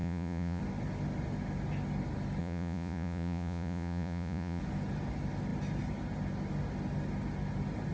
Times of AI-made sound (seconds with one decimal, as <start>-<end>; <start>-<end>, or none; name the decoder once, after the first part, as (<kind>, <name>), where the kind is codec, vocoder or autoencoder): 0.0-0.6 (vocoder, Vocos); 2.4-4.6